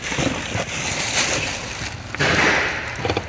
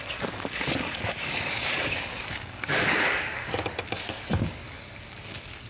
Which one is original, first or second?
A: first